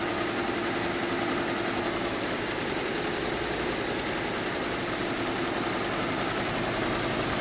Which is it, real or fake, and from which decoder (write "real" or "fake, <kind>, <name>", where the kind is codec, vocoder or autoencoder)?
real